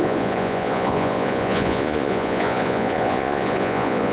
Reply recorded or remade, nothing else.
remade